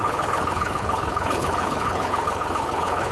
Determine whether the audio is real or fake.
fake